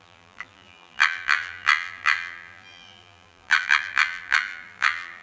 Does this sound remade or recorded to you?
remade